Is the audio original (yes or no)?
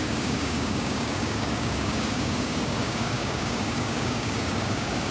no